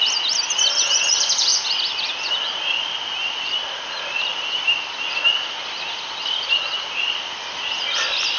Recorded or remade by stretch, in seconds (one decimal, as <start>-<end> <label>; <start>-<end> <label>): 0.0-8.4 recorded